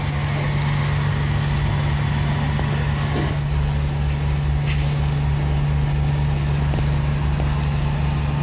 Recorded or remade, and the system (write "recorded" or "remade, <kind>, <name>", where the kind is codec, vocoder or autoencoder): recorded